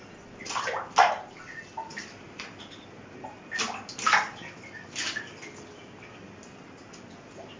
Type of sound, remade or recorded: recorded